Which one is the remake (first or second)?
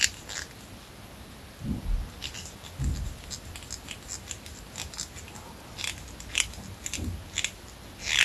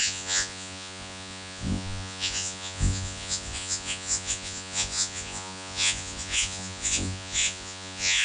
second